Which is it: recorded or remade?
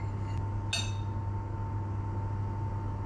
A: recorded